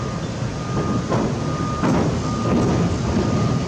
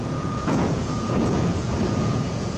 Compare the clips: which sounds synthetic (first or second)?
second